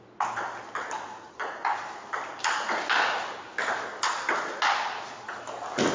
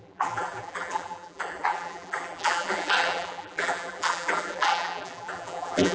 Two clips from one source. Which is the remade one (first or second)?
second